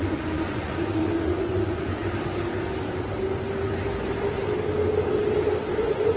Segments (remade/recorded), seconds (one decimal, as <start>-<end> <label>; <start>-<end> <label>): 0.0-2.0 remade; 2.0-5.7 recorded; 5.7-6.2 remade